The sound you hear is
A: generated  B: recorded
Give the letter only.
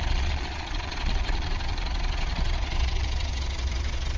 A